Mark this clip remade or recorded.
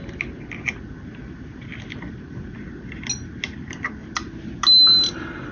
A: recorded